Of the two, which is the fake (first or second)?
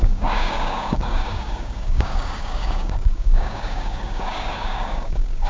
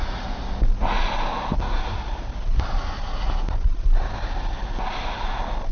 first